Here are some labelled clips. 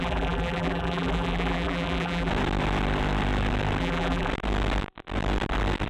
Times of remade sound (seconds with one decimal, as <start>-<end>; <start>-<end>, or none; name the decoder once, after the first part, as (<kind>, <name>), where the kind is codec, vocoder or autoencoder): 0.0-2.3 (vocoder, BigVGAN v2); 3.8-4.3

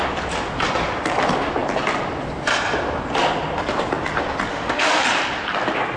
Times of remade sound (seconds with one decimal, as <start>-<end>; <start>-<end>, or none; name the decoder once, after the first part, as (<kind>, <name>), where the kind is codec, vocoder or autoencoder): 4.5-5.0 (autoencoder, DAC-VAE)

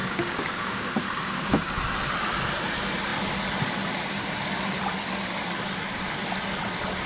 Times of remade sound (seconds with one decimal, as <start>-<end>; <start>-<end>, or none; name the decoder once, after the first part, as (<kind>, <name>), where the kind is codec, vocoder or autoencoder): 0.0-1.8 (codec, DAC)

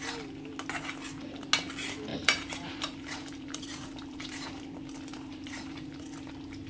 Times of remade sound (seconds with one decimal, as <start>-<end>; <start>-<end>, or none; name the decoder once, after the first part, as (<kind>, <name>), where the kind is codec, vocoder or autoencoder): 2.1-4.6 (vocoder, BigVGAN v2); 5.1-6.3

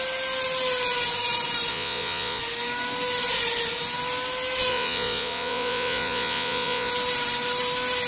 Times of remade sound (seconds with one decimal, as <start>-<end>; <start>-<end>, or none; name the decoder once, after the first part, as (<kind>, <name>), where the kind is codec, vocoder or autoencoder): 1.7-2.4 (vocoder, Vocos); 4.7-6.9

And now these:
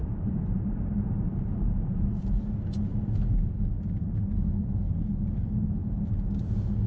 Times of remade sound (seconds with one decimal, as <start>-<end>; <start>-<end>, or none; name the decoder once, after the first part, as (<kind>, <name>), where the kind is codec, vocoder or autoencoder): 0.0-2.5 (vocoder, BigVGAN v2)

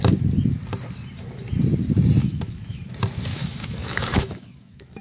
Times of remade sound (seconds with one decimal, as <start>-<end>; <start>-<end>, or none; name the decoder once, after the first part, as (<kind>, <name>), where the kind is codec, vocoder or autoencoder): 2.2-2.9 (autoencoder, DAC-VAE); 3.3-5.0